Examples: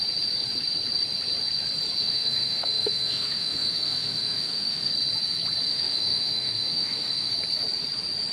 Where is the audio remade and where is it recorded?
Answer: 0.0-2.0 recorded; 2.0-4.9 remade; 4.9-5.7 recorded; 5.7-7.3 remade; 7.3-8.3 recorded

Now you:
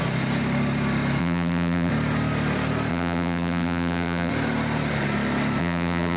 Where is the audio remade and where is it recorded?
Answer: 0.0-1.2 recorded; 1.2-1.9 remade; 1.9-2.9 recorded; 2.9-4.3 remade; 4.3-5.6 recorded; 5.6-6.2 remade

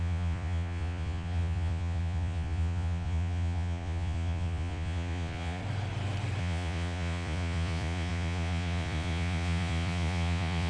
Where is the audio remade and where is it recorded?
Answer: 0.0-5.6 remade; 5.6-6.4 recorded; 6.4-10.7 remade

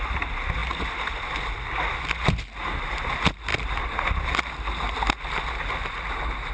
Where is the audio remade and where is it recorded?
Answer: 0.0-6.5 recorded

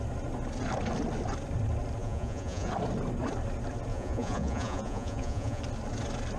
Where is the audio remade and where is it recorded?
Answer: 0.0-2.0 recorded; 2.0-2.7 remade; 2.7-3.9 recorded; 3.9-5.6 remade; 5.6-6.4 recorded

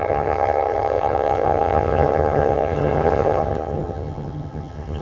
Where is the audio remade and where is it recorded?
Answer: 0.0-5.0 remade